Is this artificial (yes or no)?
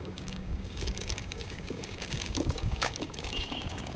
yes